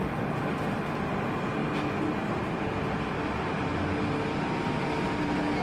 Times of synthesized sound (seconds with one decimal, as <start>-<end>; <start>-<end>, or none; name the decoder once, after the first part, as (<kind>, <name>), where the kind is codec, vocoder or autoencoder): none